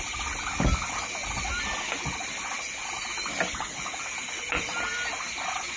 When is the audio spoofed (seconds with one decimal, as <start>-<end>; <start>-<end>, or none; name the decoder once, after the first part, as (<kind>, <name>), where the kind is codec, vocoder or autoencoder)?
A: none